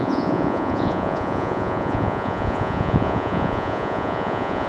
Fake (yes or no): yes